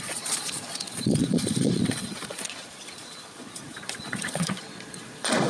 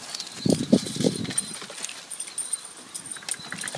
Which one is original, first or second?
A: second